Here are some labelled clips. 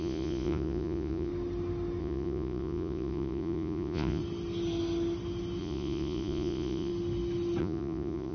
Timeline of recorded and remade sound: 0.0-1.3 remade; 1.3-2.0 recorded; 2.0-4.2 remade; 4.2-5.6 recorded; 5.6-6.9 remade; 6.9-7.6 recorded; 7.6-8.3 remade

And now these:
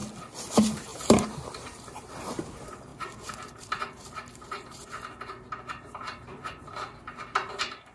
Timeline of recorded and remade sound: 0.0-0.5 recorded; 0.5-7.9 remade

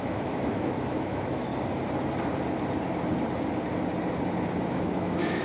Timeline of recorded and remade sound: 0.0-1.5 remade; 1.5-4.7 recorded; 4.7-5.4 remade

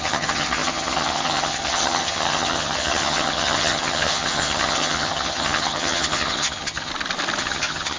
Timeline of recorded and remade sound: 0.0-6.9 remade; 6.9-7.4 recorded; 7.4-8.0 remade

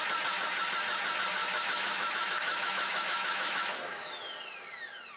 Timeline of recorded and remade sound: 0.0-1.4 recorded; 1.4-4.2 remade; 4.2-5.2 recorded

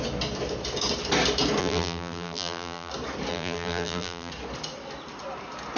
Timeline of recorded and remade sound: 0.0-1.6 recorded; 1.6-2.9 remade; 2.9-3.3 recorded; 3.3-4.3 remade; 4.3-5.8 recorded

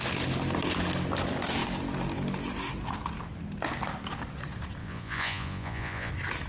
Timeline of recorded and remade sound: 0.0-4.8 recorded; 4.8-6.1 remade; 6.1-6.5 recorded